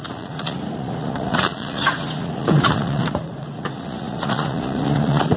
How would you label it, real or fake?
fake